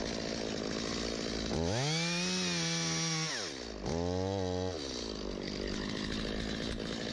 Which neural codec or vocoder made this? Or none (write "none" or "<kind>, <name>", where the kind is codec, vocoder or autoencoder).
none